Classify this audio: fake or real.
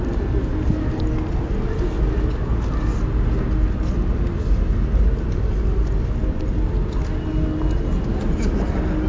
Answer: real